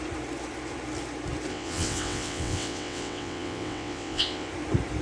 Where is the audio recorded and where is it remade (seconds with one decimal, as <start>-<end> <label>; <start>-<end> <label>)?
0.0-1.5 recorded; 1.5-4.5 remade; 4.5-5.0 recorded